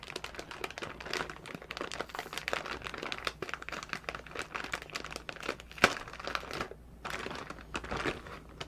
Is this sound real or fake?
real